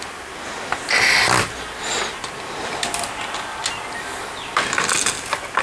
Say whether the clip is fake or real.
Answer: real